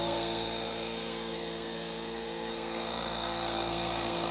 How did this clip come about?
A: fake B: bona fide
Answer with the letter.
A